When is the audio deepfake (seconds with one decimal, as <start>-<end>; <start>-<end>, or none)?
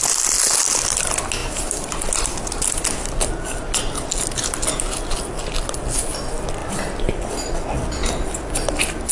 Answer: none